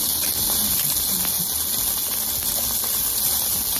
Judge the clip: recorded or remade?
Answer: recorded